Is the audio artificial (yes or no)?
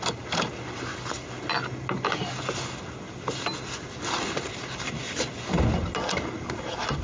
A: no